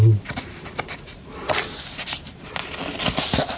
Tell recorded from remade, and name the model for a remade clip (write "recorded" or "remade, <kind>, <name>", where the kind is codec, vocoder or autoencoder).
recorded